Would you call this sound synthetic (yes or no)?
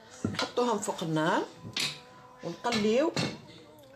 no